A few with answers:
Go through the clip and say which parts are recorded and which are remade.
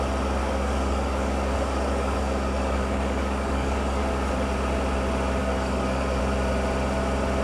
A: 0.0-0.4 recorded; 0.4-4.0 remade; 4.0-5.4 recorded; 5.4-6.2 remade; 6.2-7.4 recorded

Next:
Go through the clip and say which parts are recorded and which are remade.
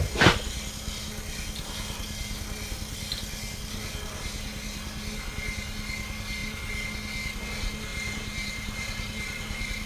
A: 0.0-7.9 recorded; 7.9-9.9 remade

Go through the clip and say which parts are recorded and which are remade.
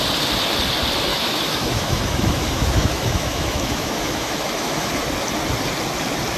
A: 0.0-1.1 recorded; 1.1-4.9 remade; 4.9-6.4 recorded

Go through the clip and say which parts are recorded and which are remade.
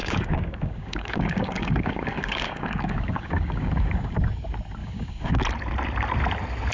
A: 0.0-3.7 remade; 3.7-4.8 recorded; 4.8-5.4 remade; 5.4-6.7 recorded